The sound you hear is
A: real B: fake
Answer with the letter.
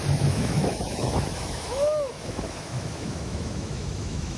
B